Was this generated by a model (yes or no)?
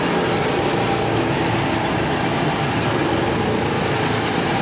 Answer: no